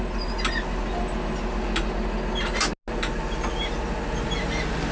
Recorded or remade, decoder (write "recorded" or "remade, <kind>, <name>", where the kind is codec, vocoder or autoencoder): recorded